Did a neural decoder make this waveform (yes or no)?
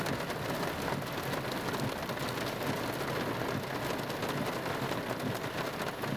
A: no